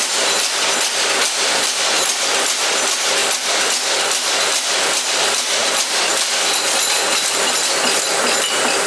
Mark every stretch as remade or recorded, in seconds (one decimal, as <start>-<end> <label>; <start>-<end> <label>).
0.0-8.9 recorded